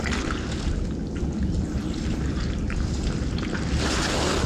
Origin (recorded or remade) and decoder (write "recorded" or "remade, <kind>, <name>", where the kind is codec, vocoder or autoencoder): recorded